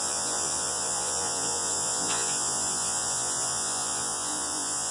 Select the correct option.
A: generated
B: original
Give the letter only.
A